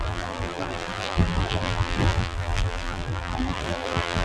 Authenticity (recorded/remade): remade